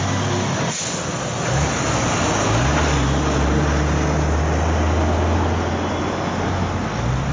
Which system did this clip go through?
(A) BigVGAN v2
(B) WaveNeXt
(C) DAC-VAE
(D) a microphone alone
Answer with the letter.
D